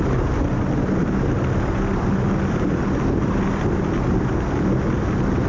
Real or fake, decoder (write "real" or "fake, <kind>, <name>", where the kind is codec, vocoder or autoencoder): real